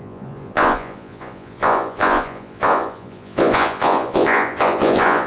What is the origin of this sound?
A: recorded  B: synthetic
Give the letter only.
B